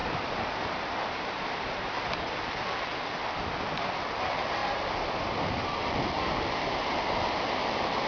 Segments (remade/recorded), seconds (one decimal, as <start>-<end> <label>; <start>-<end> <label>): 0.0-2.3 remade; 2.3-4.6 recorded; 4.6-5.6 remade; 5.6-8.1 recorded